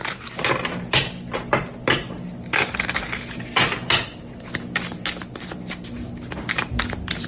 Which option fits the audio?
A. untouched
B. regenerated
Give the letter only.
A